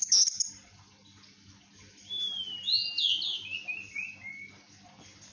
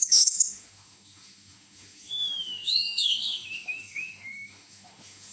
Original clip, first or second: first